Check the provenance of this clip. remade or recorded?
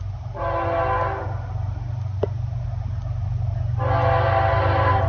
recorded